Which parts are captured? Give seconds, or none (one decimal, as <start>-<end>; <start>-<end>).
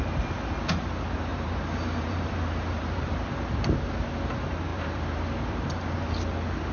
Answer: 0.0-1.3; 3.3-4.7; 6.1-6.7